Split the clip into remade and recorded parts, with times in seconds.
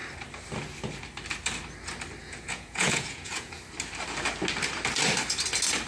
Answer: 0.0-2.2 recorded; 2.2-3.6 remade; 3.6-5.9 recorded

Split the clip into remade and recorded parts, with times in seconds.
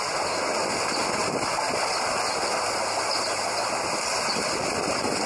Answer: 0.0-5.3 recorded